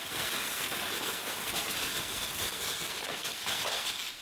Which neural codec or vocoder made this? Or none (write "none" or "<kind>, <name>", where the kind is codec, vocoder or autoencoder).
codec, SNAC